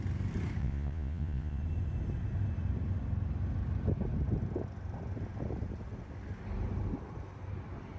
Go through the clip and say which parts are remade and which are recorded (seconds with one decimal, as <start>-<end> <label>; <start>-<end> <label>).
0.0-0.6 recorded; 0.6-1.6 remade; 1.6-8.0 recorded